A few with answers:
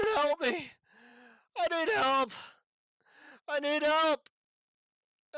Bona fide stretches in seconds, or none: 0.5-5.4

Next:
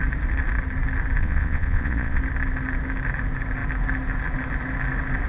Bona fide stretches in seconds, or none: 0.0-1.2; 2.2-5.3

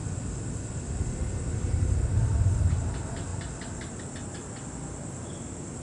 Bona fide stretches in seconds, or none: 0.0-5.8

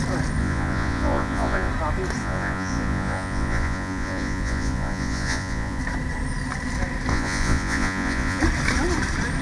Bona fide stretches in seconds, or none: 0.0-0.4; 1.7-2.2; 5.8-7.1; 8.4-9.4

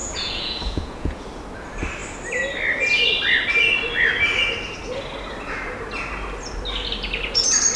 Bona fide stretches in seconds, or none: 1.2-7.8

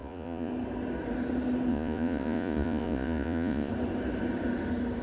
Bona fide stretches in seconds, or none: 0.5-1.7; 3.7-5.0

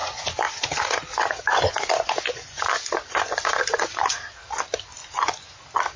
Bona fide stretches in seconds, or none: 0.7-1.5; 2.6-5.0; 5.6-6.0

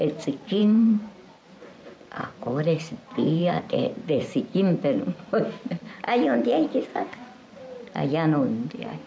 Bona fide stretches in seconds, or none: 0.0-0.6; 5.0-6.9; 7.6-9.1